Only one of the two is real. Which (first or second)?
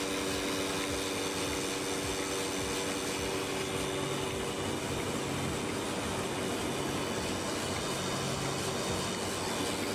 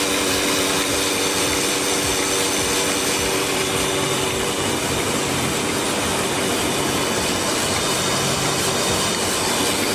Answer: first